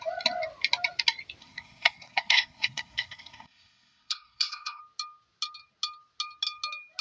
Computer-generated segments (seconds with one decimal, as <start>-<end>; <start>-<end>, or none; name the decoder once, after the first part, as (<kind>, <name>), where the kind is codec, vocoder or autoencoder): 1.4-4.8 (codec, SNAC)